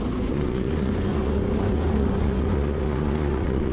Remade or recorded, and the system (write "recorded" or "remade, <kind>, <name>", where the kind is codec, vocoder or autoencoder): remade, vocoder, Vocos